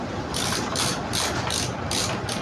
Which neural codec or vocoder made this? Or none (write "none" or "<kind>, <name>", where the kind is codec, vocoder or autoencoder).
none